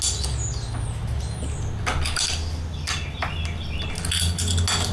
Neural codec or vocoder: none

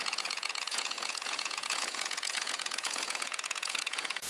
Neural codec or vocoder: vocoder, Vocos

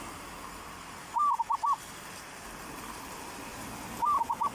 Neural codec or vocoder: none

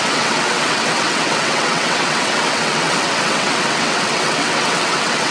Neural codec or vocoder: vocoder, WaveNeXt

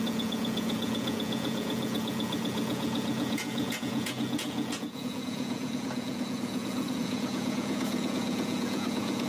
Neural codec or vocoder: vocoder, Vocos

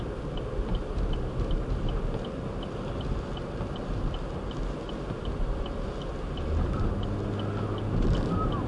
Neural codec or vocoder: none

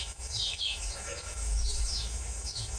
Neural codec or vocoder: autoencoder, DAC-VAE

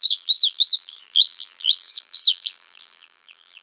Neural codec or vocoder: vocoder, BigVGAN v2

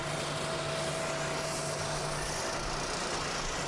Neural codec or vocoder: none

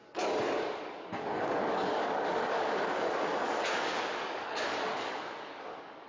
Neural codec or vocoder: codec, DAC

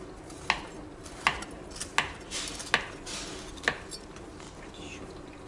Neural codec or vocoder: none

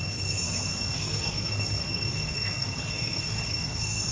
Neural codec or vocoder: codec, SNAC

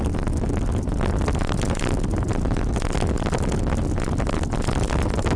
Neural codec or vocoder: none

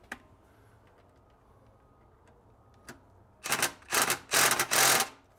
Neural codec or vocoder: none